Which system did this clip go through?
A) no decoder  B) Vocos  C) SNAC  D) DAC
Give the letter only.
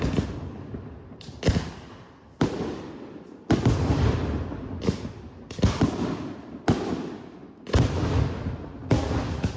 A